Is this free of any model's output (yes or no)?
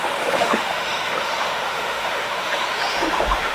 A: no